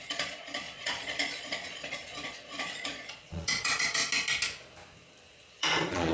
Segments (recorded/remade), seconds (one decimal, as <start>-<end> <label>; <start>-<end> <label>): 0.0-4.0 remade; 4.0-5.5 recorded; 5.5-6.1 remade